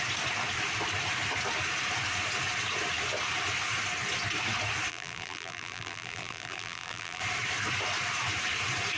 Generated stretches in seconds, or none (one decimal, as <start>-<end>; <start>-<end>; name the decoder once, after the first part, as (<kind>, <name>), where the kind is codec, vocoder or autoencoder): 4.9-7.2 (vocoder, BigVGAN v2)